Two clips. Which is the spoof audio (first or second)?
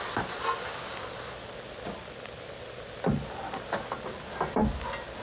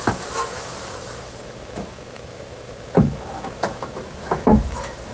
second